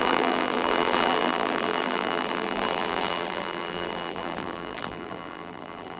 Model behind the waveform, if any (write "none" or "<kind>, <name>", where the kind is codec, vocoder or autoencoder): vocoder, BigVGAN v2